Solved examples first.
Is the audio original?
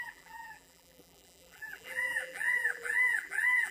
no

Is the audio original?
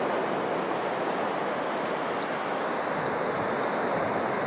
yes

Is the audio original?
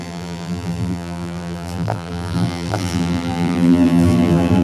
no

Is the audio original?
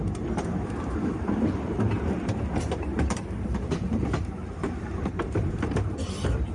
no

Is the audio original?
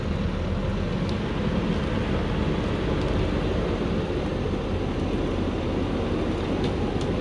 yes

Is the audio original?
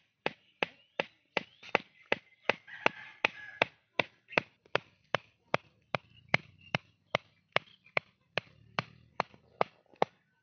yes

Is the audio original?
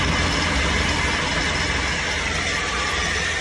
yes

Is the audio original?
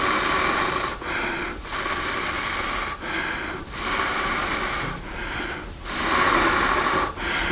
yes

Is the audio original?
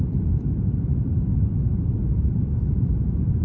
no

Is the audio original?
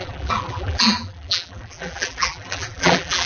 no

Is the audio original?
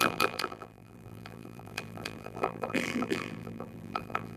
no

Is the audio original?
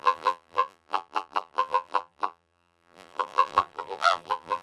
no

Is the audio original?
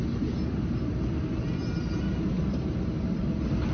yes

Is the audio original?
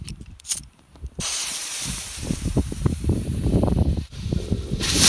no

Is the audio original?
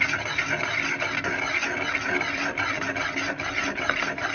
yes